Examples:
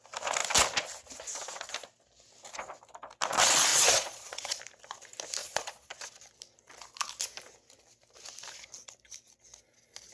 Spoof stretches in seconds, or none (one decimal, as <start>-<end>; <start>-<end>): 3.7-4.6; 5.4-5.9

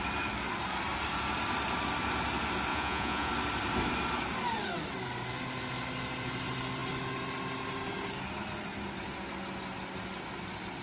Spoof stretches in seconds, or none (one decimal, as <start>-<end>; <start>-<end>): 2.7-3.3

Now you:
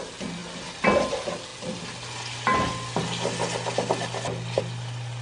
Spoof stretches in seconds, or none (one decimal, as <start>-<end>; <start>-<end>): none

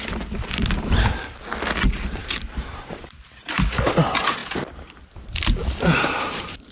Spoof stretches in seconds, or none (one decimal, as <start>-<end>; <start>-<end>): 2.2-3.5; 5.6-6.7

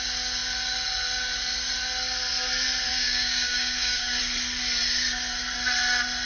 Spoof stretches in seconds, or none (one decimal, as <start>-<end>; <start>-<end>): 2.9-4.2